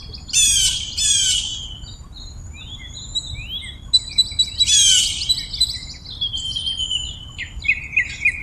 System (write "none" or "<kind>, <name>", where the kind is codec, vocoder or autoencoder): none